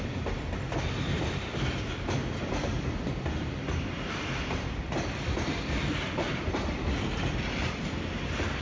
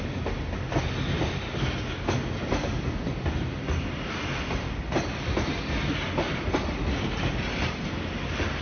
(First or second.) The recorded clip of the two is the second